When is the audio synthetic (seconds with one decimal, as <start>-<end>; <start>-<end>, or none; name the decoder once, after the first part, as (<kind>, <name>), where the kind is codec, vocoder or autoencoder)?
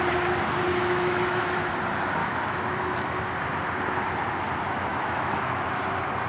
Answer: 0.7-1.6 (autoencoder, DAC-VAE); 2.2-3.2; 4.9-5.8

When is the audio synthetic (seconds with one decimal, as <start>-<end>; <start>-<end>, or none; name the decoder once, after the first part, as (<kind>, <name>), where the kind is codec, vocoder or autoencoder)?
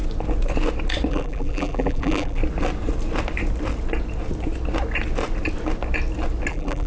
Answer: 1.1-2.4 (vocoder, BigVGAN v2); 6.5-6.9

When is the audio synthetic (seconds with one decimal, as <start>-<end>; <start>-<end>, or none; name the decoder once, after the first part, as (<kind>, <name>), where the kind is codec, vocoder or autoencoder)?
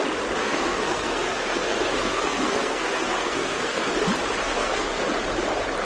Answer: 0.4-3.9 (codec, SNAC); 4.4-5.0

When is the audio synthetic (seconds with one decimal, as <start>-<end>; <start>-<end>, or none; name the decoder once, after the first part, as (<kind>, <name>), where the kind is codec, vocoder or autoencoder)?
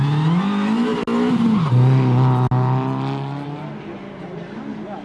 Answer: none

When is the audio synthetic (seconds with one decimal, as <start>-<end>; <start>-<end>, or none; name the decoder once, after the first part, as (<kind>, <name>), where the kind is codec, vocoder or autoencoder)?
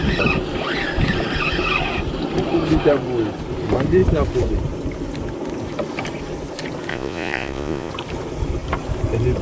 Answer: 6.9-7.9 (vocoder, Vocos)